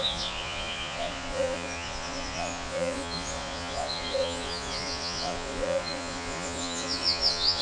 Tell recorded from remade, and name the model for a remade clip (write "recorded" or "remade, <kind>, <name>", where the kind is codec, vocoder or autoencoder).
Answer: remade, vocoder, Vocos